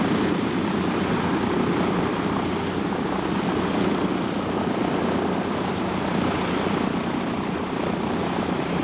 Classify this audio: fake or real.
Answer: real